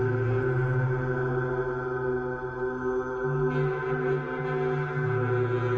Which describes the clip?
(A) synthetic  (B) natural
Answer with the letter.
B